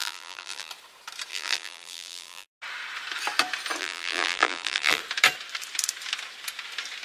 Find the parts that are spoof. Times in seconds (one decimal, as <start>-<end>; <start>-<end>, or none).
0.0-0.7; 1.3-2.5; 3.8-5.0